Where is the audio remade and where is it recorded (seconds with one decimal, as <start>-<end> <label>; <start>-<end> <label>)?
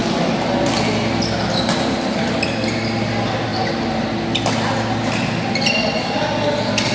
0.0-6.9 recorded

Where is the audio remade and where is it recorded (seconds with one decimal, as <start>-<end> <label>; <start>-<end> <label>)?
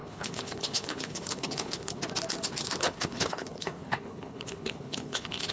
0.0-2.0 remade; 2.0-2.8 recorded; 2.8-5.5 remade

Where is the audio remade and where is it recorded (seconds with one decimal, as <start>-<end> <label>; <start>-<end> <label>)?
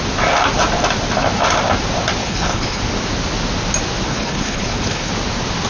0.0-2.2 recorded; 2.2-2.8 remade; 2.8-4.1 recorded; 4.1-5.1 remade; 5.1-5.7 recorded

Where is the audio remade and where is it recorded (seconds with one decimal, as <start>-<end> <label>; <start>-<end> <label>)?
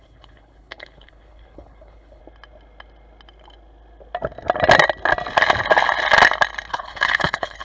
0.0-2.2 remade; 2.2-6.7 recorded; 6.7-7.6 remade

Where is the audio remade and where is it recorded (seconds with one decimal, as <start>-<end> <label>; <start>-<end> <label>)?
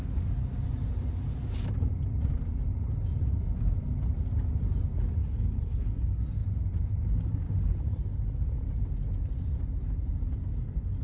0.0-5.2 recorded; 5.2-5.9 remade; 5.9-11.0 recorded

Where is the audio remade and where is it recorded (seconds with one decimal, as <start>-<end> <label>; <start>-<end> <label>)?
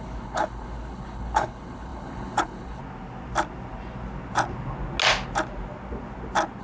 0.0-2.8 remade; 2.8-6.6 recorded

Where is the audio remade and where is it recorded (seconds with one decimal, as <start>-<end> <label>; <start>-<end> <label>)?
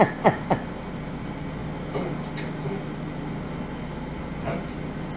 0.0-5.2 recorded